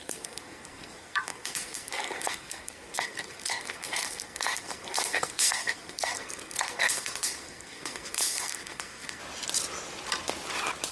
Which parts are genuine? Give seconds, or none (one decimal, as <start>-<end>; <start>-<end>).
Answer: 9.2-10.9